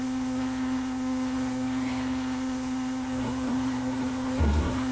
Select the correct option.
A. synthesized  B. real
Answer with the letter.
A